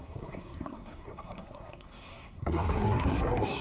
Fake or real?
fake